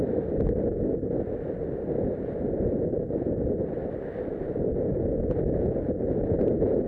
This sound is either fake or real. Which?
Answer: real